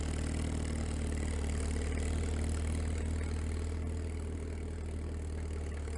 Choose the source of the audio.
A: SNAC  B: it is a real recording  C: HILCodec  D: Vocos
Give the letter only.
B